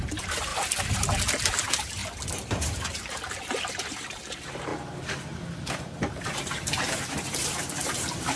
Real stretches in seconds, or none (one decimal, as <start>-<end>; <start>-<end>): 0.5-1.5; 2.0-2.5; 4.7-5.8